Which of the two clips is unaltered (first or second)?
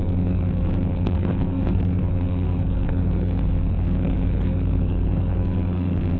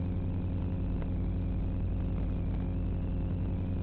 second